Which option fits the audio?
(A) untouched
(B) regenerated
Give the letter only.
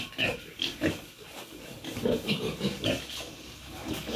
B